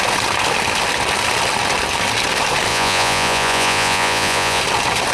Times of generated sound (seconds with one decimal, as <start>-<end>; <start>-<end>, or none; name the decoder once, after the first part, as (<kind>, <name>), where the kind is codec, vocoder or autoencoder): 2.7-4.6 (vocoder, Vocos)